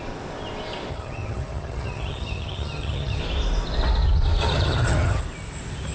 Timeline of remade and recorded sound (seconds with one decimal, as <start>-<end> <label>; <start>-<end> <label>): 0.0-0.9 recorded; 0.9-3.2 remade; 3.2-4.4 recorded; 4.4-5.2 remade; 5.2-5.9 recorded